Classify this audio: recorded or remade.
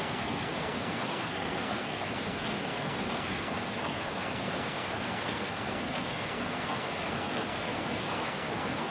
remade